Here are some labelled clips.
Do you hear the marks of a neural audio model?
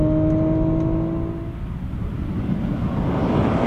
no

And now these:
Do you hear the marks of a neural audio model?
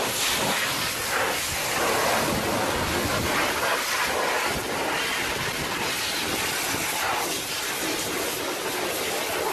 no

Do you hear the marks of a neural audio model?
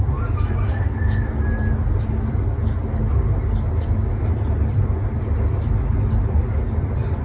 no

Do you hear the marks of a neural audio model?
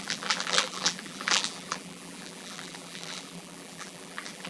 yes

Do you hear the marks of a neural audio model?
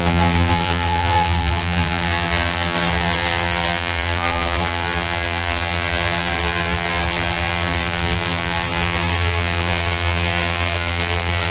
yes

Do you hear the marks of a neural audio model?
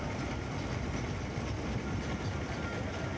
yes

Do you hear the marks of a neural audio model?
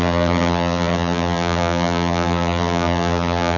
yes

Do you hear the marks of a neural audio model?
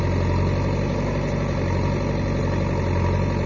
no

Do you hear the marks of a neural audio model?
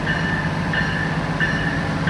no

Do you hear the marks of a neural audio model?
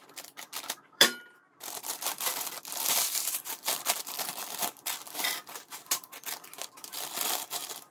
yes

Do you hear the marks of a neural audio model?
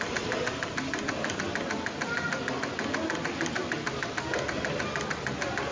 no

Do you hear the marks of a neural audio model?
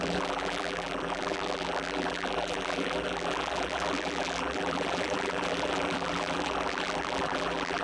yes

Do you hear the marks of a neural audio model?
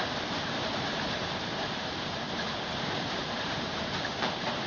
yes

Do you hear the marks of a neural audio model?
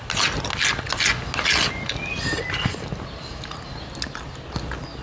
no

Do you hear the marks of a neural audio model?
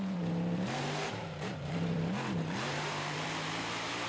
yes